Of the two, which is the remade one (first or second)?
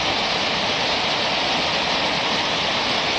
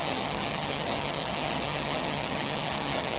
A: second